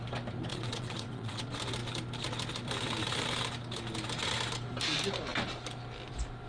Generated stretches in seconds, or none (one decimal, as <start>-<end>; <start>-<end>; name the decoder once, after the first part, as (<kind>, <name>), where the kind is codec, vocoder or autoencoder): 0.5-1.4 (vocoder, WaveNeXt)